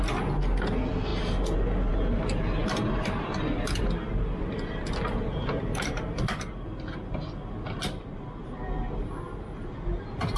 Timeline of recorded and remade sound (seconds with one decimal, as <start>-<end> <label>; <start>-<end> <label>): 0.0-10.4 recorded